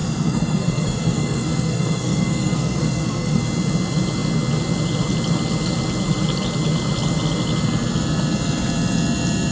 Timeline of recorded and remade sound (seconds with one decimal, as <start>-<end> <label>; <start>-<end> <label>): 0.0-3.4 remade; 3.4-9.5 recorded